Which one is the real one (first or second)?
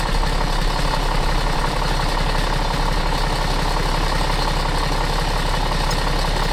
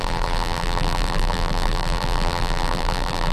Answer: first